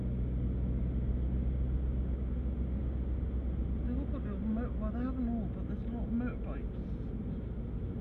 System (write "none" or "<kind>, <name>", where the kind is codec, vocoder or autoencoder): none